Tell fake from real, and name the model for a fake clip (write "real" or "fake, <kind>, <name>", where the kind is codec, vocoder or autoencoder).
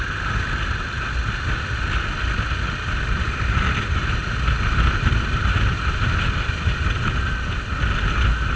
real